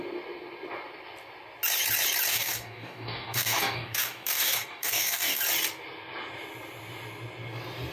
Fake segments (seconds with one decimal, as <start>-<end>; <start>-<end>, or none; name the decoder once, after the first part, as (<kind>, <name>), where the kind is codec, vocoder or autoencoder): 2.3-5.4 (codec, DAC)